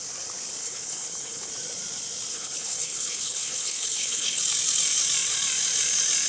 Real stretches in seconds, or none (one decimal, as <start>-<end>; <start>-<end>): 0.0-0.6; 1.5-2.3; 4.4-6.3